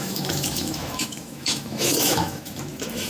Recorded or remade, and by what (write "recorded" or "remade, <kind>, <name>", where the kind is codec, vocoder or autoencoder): remade, autoencoder, DAC-VAE